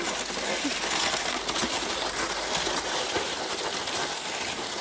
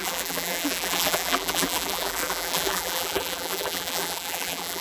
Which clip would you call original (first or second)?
first